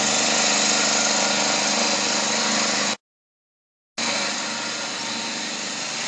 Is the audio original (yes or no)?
yes